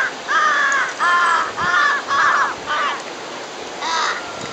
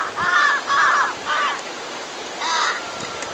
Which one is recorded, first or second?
first